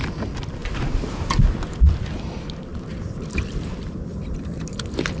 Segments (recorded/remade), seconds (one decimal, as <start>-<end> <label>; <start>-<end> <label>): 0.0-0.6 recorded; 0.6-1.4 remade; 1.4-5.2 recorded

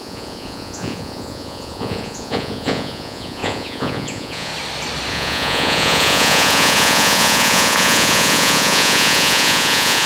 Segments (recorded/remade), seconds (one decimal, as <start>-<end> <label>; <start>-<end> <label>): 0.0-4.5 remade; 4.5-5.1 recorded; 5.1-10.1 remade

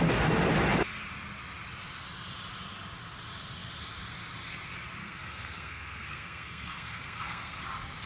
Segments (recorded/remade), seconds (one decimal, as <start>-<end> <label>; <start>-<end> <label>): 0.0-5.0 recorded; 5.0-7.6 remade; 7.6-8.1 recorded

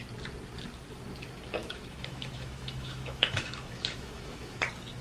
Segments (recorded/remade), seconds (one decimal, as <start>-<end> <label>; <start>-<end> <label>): 0.0-1.6 recorded; 1.6-4.6 remade; 4.6-5.0 recorded